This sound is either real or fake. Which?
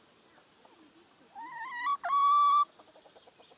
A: real